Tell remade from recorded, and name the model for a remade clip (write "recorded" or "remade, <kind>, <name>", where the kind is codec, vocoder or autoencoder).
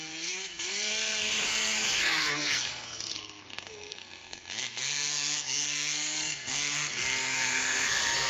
remade, codec, SNAC